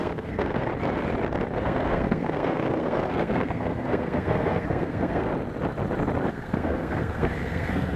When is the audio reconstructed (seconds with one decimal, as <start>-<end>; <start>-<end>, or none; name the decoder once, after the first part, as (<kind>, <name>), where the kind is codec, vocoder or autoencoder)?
0.0-0.7 (codec, SNAC); 1.6-5.3; 6.3-8.0